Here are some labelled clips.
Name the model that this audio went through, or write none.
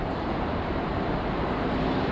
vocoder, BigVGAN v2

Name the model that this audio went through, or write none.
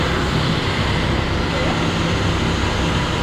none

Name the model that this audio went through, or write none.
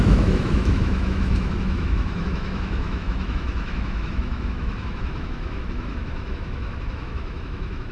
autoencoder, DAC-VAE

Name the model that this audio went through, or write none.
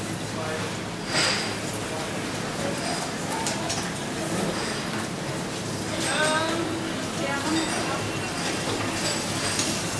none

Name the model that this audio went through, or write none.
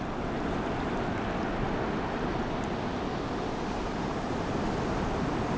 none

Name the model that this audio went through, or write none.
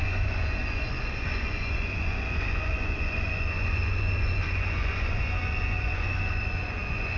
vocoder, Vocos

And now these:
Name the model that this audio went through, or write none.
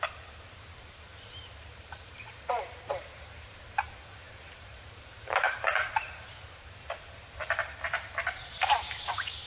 vocoder, BigVGAN v2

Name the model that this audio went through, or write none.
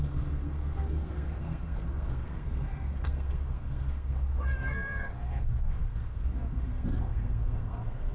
codec, SNAC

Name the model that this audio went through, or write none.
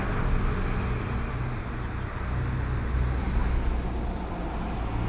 none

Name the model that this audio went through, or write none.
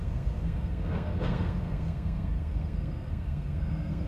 codec, SNAC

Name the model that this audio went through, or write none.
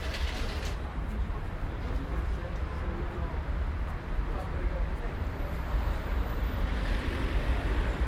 vocoder, BigVGAN v2